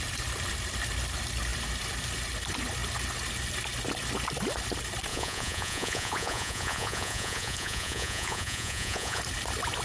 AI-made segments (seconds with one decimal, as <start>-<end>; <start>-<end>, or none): 5.1-9.2